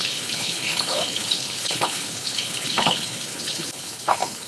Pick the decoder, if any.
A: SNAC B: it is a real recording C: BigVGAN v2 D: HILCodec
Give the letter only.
D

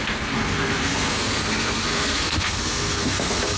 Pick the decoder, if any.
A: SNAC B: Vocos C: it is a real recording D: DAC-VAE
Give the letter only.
A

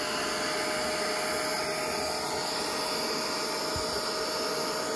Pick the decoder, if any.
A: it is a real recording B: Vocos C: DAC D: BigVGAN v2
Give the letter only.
A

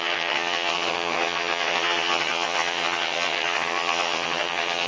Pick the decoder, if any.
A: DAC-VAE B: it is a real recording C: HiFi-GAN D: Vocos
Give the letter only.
C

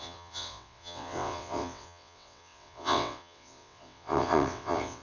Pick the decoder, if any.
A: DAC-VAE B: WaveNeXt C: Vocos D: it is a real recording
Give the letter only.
B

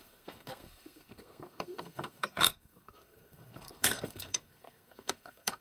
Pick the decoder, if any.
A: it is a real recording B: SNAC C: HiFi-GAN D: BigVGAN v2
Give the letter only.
B